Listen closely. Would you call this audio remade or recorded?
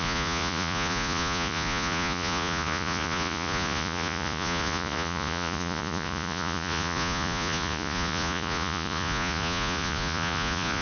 remade